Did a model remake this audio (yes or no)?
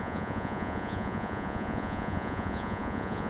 yes